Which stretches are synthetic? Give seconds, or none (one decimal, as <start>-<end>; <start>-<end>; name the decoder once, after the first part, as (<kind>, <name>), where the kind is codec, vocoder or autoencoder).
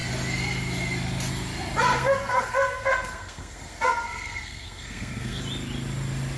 1.9-5.4 (codec, SNAC)